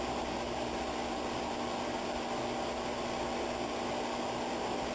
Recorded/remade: recorded